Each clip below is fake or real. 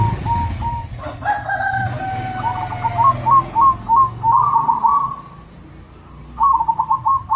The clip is real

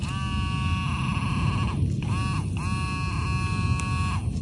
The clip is real